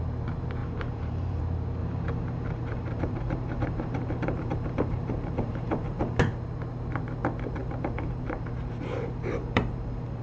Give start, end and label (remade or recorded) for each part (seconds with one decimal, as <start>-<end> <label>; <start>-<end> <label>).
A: 0.0-0.6 recorded; 0.6-1.4 remade; 1.4-1.8 recorded; 1.8-6.2 remade; 6.2-7.6 recorded; 7.6-10.2 remade